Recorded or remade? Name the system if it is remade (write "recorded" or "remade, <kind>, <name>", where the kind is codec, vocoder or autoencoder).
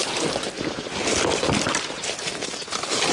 recorded